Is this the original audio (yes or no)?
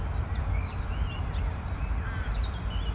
yes